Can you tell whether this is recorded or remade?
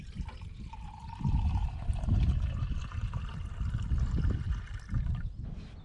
recorded